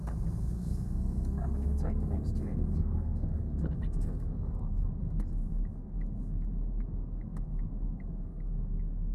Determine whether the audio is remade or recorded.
remade